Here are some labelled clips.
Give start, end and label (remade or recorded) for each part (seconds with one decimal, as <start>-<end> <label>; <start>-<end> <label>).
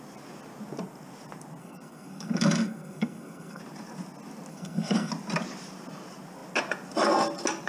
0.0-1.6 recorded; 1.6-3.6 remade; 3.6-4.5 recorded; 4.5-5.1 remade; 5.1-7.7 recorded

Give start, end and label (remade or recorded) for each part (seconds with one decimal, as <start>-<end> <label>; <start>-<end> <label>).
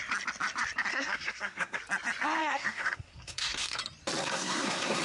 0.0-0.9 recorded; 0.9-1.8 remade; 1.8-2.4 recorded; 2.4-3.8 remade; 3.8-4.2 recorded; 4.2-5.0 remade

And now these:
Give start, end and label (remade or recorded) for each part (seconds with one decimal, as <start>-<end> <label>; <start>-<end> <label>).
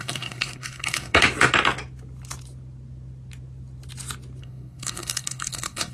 0.0-1.2 remade; 1.2-4.4 recorded; 4.4-5.9 remade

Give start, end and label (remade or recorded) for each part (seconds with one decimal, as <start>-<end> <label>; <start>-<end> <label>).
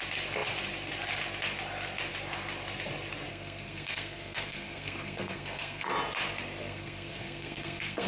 0.0-3.3 recorded; 3.3-5.9 remade; 5.9-6.6 recorded; 6.6-8.1 remade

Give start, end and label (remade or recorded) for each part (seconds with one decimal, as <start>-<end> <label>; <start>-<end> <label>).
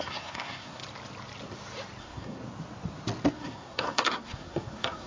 0.0-0.8 remade; 0.8-2.0 recorded; 2.0-2.4 remade; 2.4-3.3 recorded; 3.3-5.1 remade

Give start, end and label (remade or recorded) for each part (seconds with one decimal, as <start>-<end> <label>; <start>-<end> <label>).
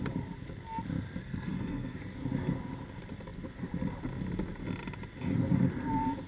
0.0-1.2 recorded; 1.2-2.0 remade; 2.0-6.3 recorded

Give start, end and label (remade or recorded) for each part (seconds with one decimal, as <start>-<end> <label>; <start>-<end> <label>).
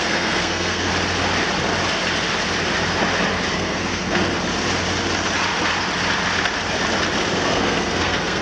0.0-0.9 remade; 0.9-3.5 recorded; 3.5-4.2 remade; 4.2-7.3 recorded; 7.3-8.4 remade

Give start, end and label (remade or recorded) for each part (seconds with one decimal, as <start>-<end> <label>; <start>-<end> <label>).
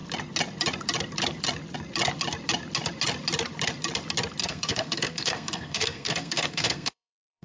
0.0-4.4 recorded; 4.4-7.4 remade